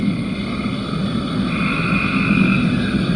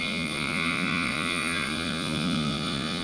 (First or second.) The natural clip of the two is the first